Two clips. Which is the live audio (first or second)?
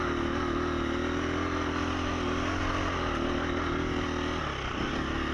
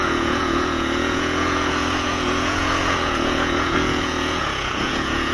first